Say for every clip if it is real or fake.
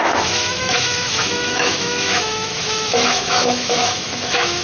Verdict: fake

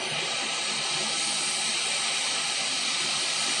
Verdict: real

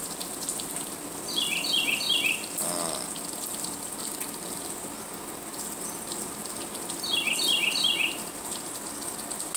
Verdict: real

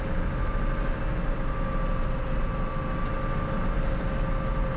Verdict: real